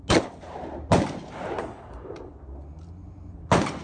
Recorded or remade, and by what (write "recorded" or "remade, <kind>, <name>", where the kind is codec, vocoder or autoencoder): recorded